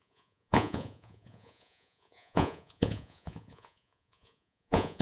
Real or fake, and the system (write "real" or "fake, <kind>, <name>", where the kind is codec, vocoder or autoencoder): fake, vocoder, Vocos